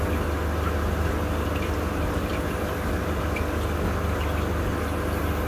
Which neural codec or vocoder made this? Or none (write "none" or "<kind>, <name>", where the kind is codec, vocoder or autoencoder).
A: none